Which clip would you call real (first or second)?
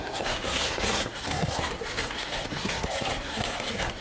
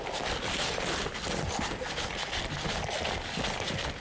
second